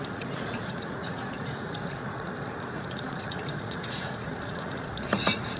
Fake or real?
fake